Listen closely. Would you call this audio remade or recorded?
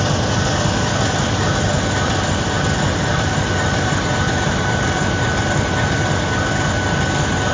recorded